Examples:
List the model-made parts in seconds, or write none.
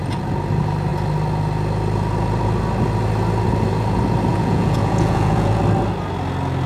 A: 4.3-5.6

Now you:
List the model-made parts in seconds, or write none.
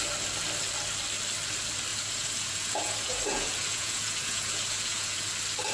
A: 1.9-5.3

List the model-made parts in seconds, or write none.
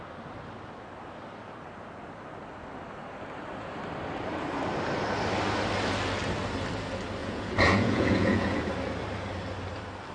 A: 7.2-8.6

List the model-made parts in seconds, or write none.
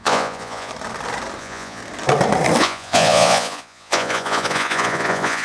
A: 0.0-0.7; 1.4-1.8; 2.6-5.4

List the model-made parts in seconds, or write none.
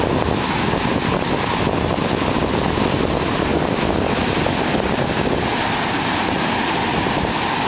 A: none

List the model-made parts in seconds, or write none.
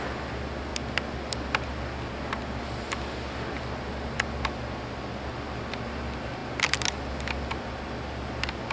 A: none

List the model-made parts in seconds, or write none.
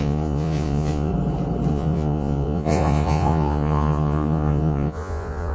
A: 0.0-1.1; 1.7-5.5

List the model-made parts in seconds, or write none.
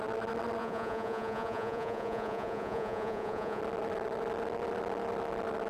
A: 0.6-3.6